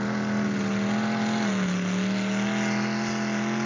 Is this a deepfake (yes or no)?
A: no